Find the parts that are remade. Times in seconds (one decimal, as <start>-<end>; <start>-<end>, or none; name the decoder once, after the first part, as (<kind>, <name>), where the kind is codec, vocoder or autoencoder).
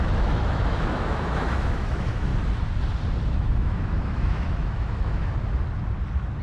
0.0-2.3 (autoencoder, DAC-VAE); 3.3-5.2